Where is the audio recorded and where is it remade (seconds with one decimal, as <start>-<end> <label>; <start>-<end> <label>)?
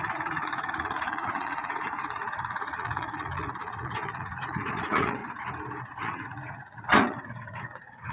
0.0-5.2 remade; 5.2-5.8 recorded; 5.8-8.1 remade